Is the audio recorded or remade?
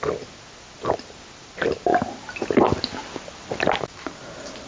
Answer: recorded